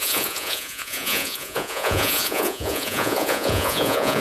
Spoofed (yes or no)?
yes